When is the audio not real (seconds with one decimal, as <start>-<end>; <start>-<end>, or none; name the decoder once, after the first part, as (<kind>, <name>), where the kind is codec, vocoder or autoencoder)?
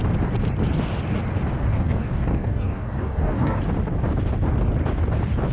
1.7-3.6 (codec, DAC)